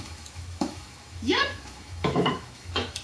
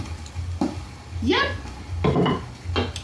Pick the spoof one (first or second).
first